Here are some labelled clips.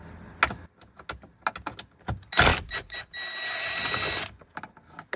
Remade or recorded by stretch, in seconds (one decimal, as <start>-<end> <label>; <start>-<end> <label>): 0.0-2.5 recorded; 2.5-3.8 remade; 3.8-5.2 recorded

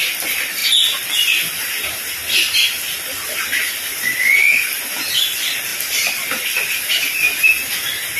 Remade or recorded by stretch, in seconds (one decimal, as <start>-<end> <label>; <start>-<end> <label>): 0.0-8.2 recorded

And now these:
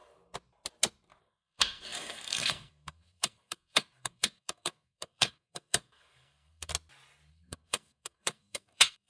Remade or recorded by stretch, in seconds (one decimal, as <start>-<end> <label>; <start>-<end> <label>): 0.0-1.2 recorded; 1.2-6.7 remade; 6.7-7.3 recorded; 7.3-9.1 remade